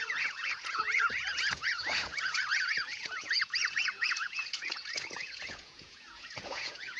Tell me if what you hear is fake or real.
fake